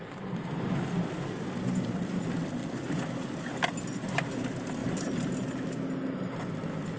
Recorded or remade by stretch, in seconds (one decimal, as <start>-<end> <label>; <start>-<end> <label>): 0.0-4.8 recorded; 4.8-5.3 remade; 5.3-7.0 recorded